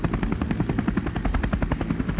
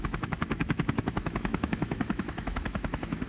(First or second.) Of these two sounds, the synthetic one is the second